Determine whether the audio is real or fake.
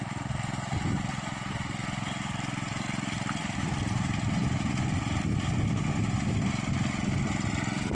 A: real